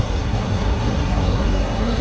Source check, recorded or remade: remade